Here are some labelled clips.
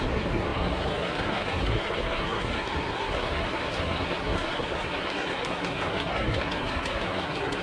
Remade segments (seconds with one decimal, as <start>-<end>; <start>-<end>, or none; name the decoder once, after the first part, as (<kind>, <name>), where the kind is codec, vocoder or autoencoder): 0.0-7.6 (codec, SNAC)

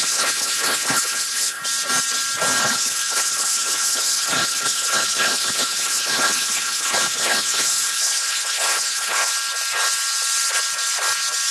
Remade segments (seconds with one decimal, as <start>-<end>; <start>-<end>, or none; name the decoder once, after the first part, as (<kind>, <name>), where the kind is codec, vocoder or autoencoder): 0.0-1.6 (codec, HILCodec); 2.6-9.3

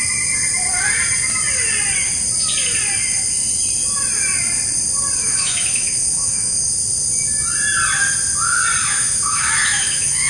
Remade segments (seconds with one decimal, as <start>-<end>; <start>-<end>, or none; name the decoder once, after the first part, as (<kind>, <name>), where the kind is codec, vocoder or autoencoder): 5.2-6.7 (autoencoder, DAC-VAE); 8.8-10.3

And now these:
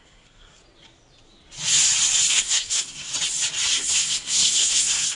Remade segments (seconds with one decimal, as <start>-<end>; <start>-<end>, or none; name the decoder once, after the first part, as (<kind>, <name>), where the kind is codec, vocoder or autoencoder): 0.0-0.6 (codec, SNAC); 2.3-3.1; 3.8-5.2

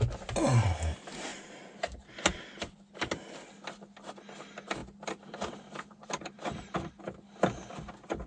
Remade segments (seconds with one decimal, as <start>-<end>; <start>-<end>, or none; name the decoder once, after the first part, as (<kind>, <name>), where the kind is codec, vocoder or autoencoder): 1.3-2.1 (vocoder, BigVGAN v2); 4.8-6.9

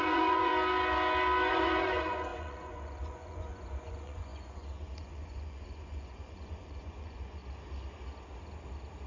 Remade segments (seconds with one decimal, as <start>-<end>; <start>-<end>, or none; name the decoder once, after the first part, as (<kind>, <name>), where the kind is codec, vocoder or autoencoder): 0.0-0.5 (vocoder, Vocos); 1.5-7.4

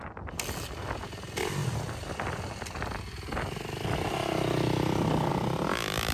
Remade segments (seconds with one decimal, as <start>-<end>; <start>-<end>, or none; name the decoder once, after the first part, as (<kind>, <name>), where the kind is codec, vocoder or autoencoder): none

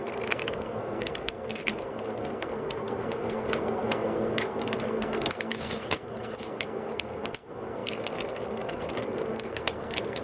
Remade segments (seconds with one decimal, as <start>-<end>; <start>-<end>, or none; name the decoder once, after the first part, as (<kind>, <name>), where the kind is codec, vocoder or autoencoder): 0.0-10.2 (codec, SNAC)